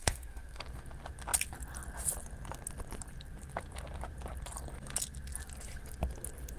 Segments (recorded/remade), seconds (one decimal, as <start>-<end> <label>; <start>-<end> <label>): 0.0-0.6 remade; 0.6-6.6 recorded